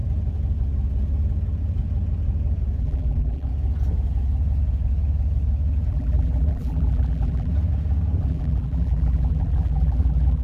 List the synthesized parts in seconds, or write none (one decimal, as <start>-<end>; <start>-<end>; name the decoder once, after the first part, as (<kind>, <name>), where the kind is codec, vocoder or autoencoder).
2.8-3.5 (vocoder, BigVGAN v2); 5.9-7.5; 8.2-10.4